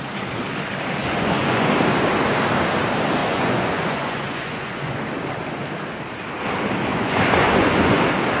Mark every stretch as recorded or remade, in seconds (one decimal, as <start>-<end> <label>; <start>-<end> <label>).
0.0-1.0 recorded; 1.0-1.7 remade; 1.7-3.2 recorded; 3.2-5.0 remade; 5.0-6.9 recorded; 6.9-8.0 remade; 8.0-8.4 recorded